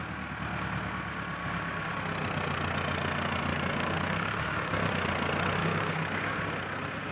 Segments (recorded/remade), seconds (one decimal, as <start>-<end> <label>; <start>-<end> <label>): 0.0-1.4 recorded; 1.4-1.9 remade; 1.9-3.5 recorded; 3.5-4.9 remade; 4.9-5.6 recorded; 5.6-6.5 remade; 6.5-7.1 recorded